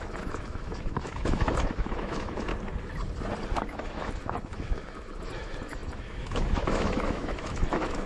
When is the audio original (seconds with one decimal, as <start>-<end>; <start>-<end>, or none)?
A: 2.5-3.7